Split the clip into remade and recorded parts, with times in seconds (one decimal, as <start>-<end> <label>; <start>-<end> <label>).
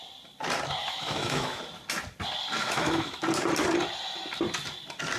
0.0-0.8 recorded; 0.8-1.6 remade; 1.6-2.6 recorded; 2.6-3.2 remade; 3.2-5.2 recorded